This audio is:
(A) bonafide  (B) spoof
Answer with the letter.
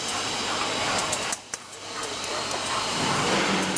B